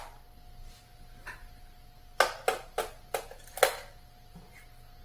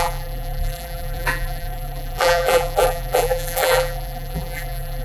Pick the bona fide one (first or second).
first